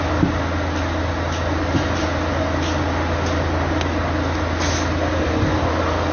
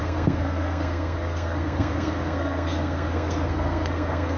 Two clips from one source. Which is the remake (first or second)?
second